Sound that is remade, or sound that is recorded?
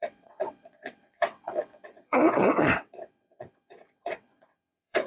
remade